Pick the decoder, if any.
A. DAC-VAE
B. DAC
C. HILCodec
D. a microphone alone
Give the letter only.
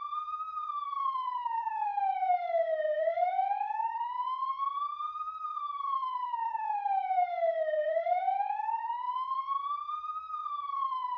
A